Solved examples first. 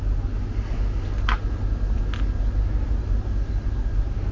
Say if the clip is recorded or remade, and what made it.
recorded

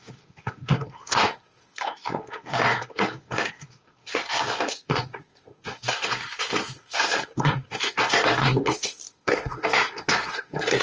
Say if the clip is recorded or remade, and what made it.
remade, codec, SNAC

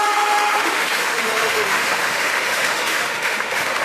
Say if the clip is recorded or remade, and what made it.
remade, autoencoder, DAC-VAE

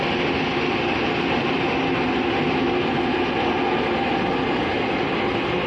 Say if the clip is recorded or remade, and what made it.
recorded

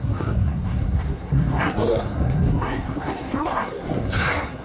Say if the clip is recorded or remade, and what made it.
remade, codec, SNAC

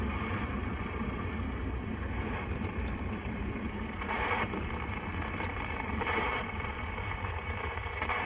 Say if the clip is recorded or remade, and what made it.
remade, vocoder, BigVGAN v2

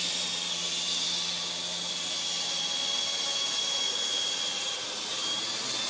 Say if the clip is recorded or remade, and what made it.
recorded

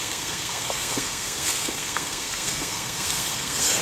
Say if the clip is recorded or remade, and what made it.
remade, codec, SNAC